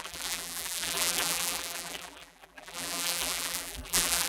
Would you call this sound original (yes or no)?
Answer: no